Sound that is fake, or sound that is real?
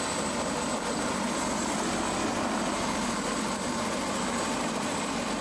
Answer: real